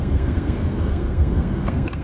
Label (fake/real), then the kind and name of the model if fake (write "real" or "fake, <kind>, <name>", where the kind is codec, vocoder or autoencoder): fake, codec, SNAC